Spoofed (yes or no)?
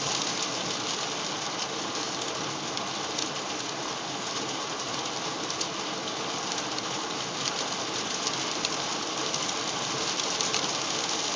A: no